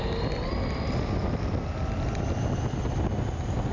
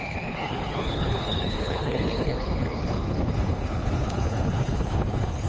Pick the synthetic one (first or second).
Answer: second